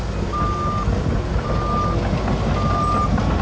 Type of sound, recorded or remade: recorded